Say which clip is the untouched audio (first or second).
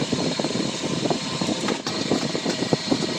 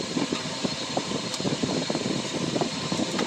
first